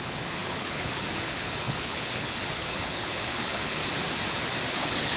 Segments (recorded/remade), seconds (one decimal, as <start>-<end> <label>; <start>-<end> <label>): 0.0-3.8 remade; 3.8-4.7 recorded; 4.7-5.2 remade